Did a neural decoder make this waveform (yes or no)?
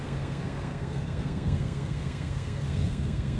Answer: yes